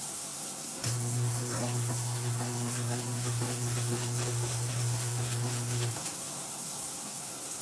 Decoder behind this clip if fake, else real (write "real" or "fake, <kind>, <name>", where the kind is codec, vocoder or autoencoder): fake, codec, SNAC